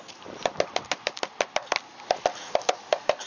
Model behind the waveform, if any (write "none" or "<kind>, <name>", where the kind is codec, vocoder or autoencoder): none